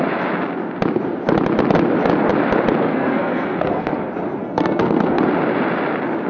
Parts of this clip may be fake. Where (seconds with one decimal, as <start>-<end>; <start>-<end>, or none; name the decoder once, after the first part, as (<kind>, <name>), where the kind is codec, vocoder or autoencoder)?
2.9-3.9 (codec, SNAC); 4.4-5.2